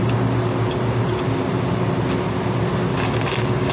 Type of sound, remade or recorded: recorded